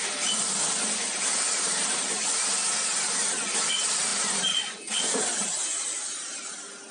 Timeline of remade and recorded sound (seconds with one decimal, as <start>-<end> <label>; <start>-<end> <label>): 0.0-4.1 recorded; 4.1-5.2 remade; 5.2-6.9 recorded